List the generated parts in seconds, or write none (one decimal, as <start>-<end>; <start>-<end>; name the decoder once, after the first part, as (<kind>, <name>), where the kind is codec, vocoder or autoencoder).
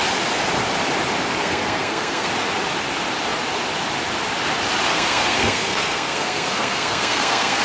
1.4-2.3 (codec, SNAC); 4.9-7.6